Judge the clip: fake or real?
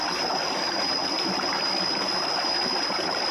fake